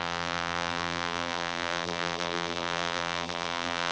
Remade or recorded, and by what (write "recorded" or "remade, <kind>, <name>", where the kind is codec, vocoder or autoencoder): remade, vocoder, BigVGAN v2